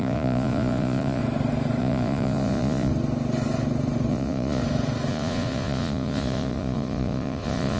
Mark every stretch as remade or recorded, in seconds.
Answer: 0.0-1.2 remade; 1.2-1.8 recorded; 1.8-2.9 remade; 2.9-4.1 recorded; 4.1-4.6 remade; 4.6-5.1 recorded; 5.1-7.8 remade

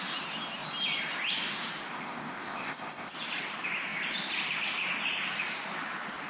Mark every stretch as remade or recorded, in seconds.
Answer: 0.0-1.9 recorded; 1.9-3.1 remade; 3.1-6.3 recorded

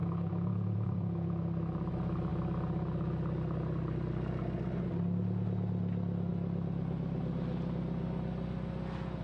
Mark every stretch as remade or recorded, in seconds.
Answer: 0.0-1.3 remade; 1.3-9.2 recorded